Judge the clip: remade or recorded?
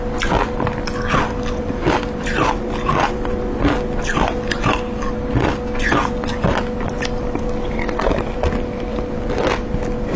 recorded